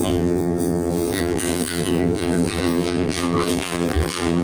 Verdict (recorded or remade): remade